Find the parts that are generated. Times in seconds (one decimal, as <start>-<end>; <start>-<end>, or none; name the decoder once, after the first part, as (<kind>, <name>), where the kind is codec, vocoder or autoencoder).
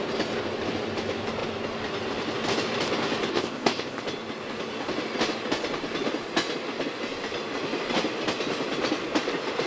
3.3-4.0 (codec, ZipCodec)